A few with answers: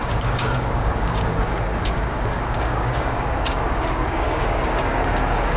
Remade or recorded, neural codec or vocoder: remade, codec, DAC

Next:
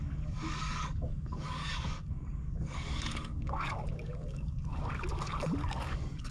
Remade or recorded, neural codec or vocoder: remade, codec, DAC